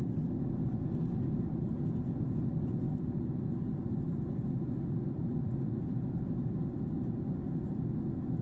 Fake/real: real